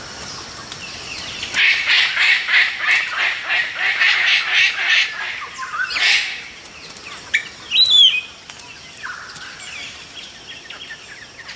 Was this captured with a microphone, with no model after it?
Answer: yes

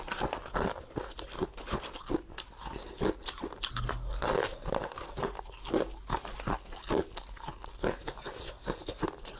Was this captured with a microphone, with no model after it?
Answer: yes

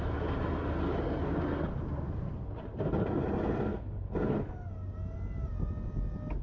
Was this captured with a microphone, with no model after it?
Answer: yes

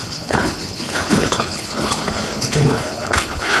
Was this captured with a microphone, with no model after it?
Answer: no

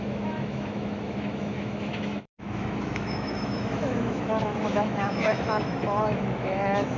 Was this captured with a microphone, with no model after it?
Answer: no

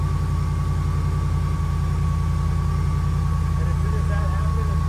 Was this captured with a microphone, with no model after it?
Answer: yes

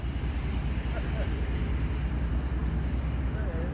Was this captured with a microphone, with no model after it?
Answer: yes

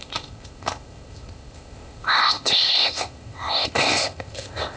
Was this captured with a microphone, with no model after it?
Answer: no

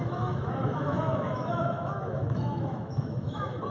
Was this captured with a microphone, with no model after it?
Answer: no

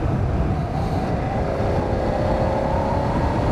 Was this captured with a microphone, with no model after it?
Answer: yes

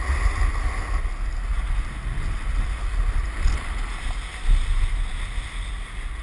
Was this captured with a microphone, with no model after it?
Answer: yes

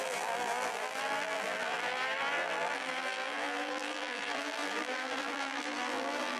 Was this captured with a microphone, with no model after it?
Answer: no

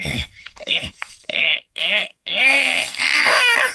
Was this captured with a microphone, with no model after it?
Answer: no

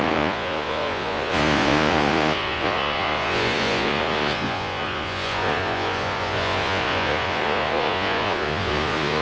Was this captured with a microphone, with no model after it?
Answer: no